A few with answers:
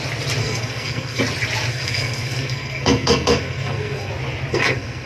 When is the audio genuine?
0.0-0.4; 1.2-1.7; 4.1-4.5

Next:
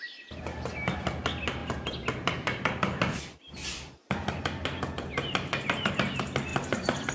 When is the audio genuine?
0.0-7.1

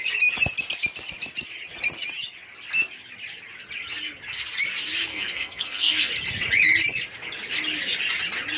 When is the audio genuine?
0.0-5.1; 6.1-8.6

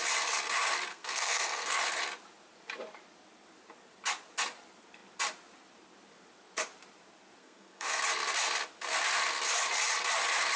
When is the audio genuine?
0.0-0.9; 1.8-7.4; 8.0-10.6

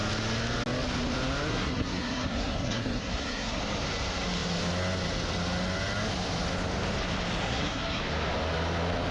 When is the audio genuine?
0.0-1.5; 3.6-7.4; 8.0-9.1

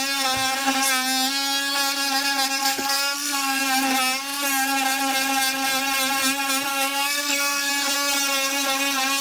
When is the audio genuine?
0.0-2.6; 3.6-6.7; 7.7-9.2

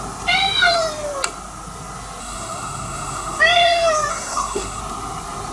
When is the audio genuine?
0.0-2.2; 3.4-4.1; 4.8-5.5

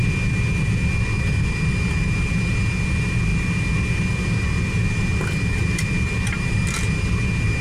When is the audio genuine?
0.0-7.6